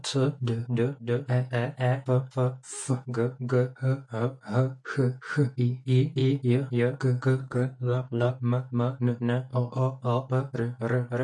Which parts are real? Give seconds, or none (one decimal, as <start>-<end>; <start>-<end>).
0.0-7.4; 8.3-11.2